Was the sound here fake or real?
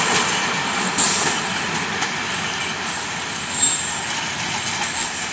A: real